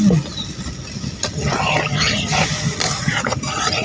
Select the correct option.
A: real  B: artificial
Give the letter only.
A